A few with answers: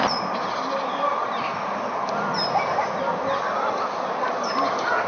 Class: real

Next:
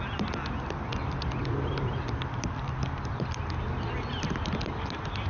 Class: real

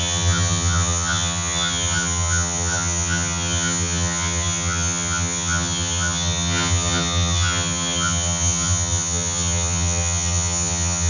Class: fake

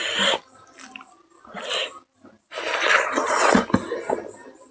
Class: real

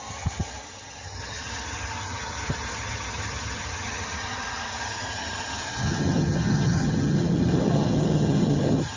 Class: fake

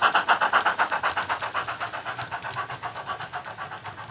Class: real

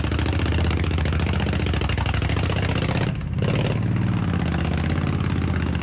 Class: real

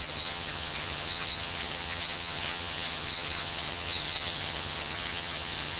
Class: fake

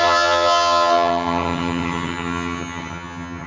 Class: fake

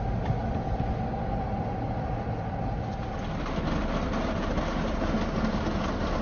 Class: real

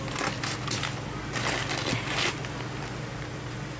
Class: real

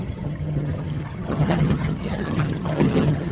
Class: fake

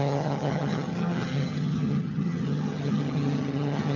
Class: fake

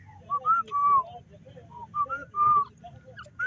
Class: real